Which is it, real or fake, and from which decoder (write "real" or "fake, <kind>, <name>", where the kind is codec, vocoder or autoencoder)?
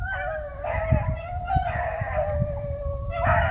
real